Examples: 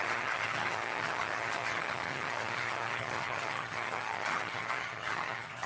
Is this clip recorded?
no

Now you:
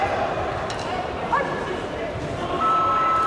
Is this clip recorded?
yes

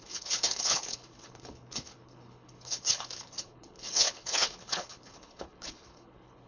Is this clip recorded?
no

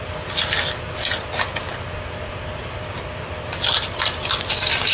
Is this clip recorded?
yes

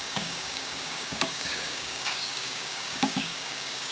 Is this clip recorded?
no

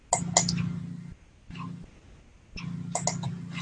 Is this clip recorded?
yes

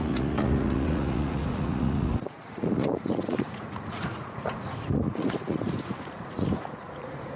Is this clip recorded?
no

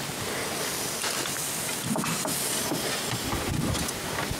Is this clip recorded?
yes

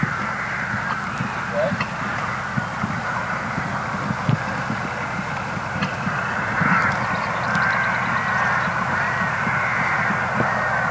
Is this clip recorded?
yes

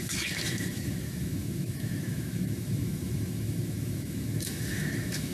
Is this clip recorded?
no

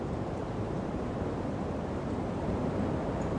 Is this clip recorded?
no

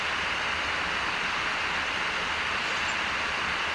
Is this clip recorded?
yes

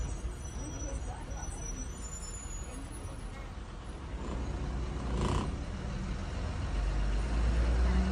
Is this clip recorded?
yes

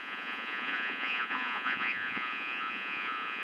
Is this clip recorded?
no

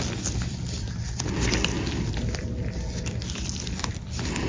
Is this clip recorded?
yes